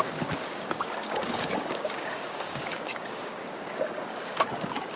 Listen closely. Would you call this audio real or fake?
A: fake